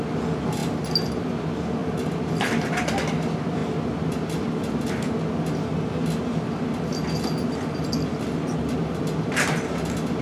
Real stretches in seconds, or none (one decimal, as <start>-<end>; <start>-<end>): 0.0-10.2